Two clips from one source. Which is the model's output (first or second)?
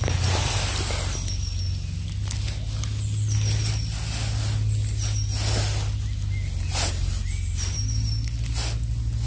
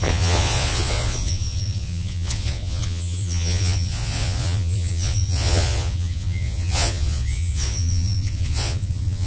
second